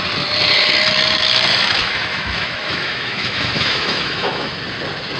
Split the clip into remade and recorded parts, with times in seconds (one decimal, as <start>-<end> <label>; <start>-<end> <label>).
0.0-1.5 recorded; 1.5-4.6 remade; 4.6-5.2 recorded